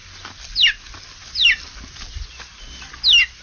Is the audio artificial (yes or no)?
no